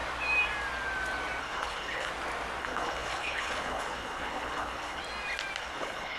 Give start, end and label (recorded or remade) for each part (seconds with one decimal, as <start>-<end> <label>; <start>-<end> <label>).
0.0-1.4 recorded; 1.4-2.1 remade; 2.1-2.6 recorded; 2.6-5.0 remade; 5.0-5.6 recorded; 5.6-6.2 remade